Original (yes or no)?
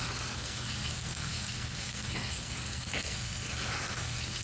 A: no